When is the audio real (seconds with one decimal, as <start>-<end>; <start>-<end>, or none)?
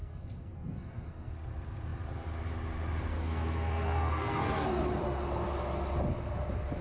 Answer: 1.3-3.1; 4.8-6.8